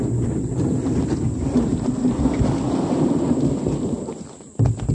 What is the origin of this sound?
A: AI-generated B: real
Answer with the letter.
B